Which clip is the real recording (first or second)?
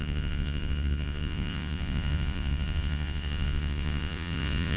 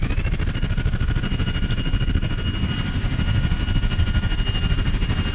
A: second